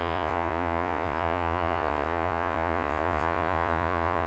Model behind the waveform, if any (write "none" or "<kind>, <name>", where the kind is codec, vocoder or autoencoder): vocoder, Vocos